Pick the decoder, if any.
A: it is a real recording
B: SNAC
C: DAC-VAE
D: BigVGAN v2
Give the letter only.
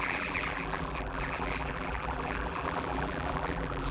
D